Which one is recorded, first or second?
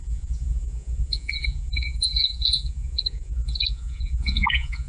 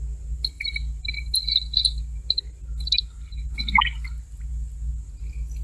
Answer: second